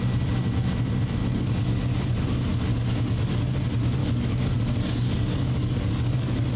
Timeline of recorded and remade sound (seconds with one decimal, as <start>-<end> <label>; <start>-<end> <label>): 0.0-1.2 recorded; 1.2-1.9 remade; 1.9-2.7 recorded; 2.7-3.4 remade; 3.4-4.0 recorded; 4.0-6.6 remade